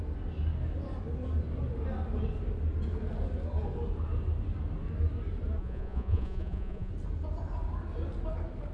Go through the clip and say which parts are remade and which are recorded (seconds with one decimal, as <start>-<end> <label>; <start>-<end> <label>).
0.0-5.6 recorded; 5.6-6.9 remade; 6.9-8.7 recorded